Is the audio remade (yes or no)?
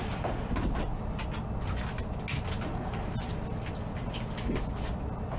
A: no